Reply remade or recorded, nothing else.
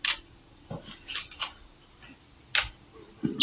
recorded